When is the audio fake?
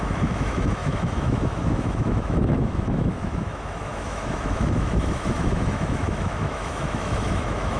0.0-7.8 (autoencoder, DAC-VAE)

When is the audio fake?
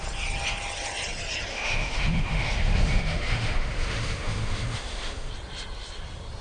1.5-5.3 (autoencoder, DAC-VAE)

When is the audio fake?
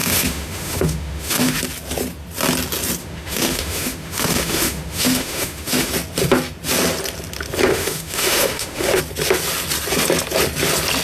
0.0-1.6 (autoencoder, DAC-VAE); 3.0-5.9; 7.7-9.0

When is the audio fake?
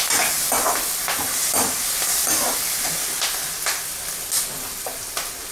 none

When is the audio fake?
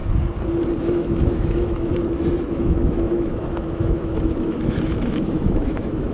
0.8-1.9 (autoencoder, DAC-VAE); 2.5-6.1